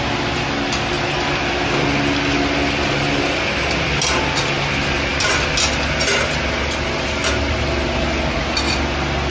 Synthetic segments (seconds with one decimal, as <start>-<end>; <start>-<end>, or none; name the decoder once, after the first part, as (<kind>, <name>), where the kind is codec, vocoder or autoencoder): none